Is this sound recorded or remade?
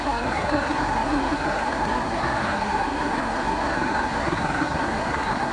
remade